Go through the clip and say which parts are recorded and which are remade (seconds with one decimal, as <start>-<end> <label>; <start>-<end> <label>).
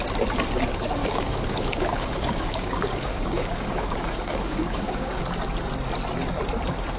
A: 0.0-1.0 recorded; 1.0-5.2 remade; 5.2-7.0 recorded